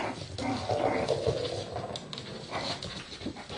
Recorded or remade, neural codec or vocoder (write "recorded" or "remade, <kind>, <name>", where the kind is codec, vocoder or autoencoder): recorded